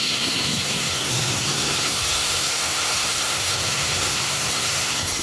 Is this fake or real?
fake